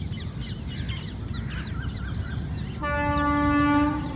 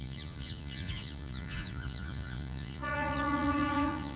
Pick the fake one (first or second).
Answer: second